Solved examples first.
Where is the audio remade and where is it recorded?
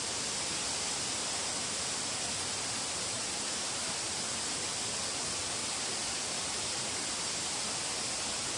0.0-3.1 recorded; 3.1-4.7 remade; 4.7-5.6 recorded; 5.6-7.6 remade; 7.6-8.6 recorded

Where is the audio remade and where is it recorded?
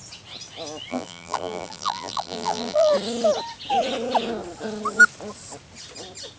0.0-0.9 recorded; 0.9-2.9 remade; 2.9-6.4 recorded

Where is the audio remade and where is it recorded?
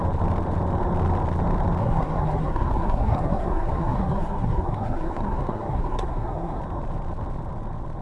0.0-1.8 recorded; 1.8-6.6 remade; 6.6-8.0 recorded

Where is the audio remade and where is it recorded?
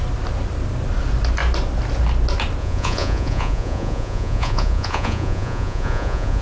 0.0-2.6 recorded; 2.6-6.4 remade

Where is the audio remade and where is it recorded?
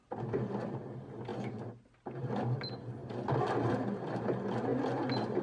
0.0-5.4 recorded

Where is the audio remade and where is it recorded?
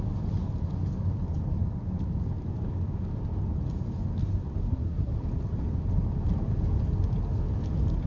0.0-4.6 recorded; 4.6-5.1 remade; 5.1-8.1 recorded